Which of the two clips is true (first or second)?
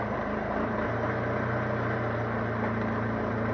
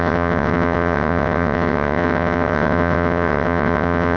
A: first